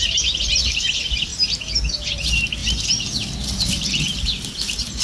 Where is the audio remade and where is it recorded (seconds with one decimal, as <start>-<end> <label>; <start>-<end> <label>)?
0.0-1.3 remade; 1.3-1.9 recorded; 1.9-2.6 remade; 2.6-3.9 recorded; 3.9-5.0 remade